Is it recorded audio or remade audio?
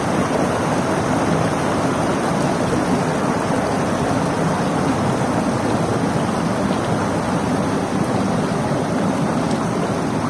recorded